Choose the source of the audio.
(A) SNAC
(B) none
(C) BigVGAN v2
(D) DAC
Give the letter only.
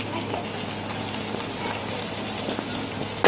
B